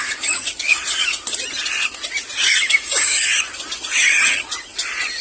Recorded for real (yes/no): yes